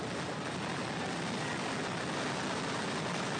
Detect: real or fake real